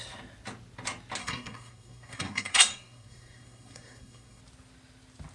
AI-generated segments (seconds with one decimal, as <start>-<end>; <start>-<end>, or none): 1.2-4.4